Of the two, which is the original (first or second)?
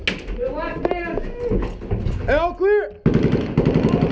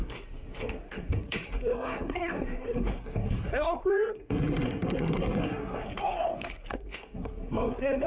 first